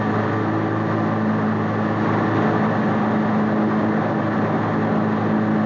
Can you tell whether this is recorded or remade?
recorded